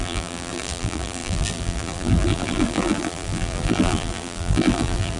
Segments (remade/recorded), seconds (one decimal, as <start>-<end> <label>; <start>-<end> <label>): 0.0-5.2 remade